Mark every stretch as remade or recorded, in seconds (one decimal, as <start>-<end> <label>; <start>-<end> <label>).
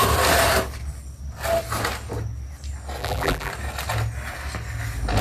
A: 0.0-3.0 recorded; 3.0-3.5 remade; 3.5-5.2 recorded